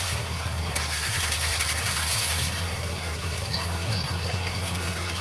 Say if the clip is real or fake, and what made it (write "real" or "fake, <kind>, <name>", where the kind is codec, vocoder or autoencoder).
fake, codec, SNAC